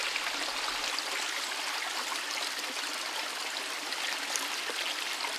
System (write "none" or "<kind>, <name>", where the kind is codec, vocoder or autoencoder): none